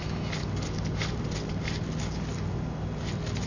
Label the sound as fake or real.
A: real